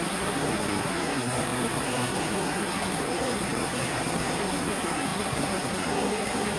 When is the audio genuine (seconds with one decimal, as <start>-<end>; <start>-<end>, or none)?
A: none